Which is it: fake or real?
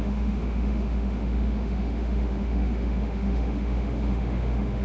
fake